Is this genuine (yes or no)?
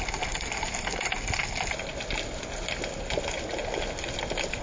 yes